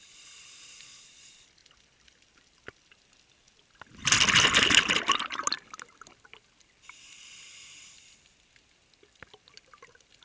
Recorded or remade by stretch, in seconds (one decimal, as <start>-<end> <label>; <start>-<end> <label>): 0.0-10.2 recorded